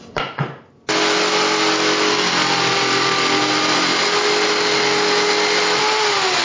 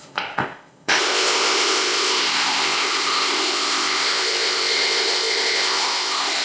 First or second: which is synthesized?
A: second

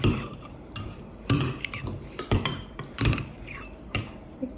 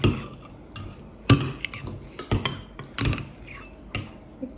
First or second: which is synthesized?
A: first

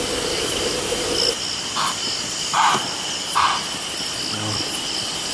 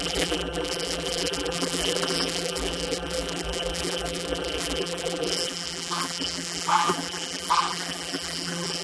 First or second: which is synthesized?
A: second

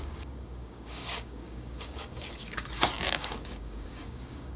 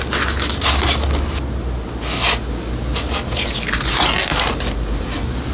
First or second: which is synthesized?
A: first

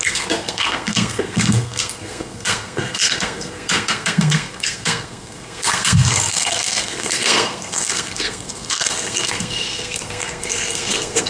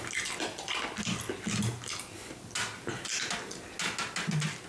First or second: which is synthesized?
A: first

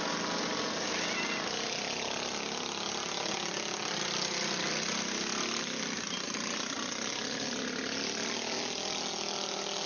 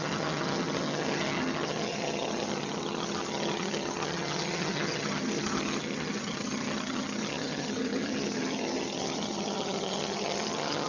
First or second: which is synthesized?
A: second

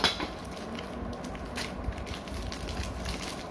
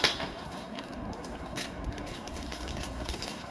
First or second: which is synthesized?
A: second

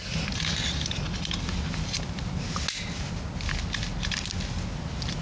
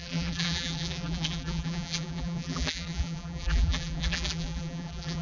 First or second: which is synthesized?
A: second